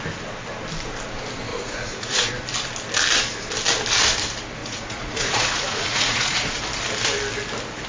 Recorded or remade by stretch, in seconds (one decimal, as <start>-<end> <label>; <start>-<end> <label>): 0.0-1.5 recorded; 1.5-2.3 remade; 2.3-4.6 recorded; 4.6-6.6 remade; 6.6-7.9 recorded